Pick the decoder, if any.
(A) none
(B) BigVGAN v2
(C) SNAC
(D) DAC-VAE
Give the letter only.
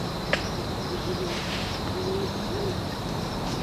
B